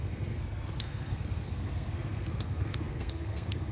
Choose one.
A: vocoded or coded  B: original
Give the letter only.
A